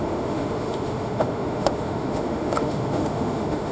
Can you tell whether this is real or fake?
fake